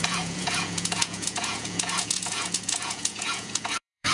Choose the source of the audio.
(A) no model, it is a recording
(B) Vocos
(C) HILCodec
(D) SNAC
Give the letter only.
B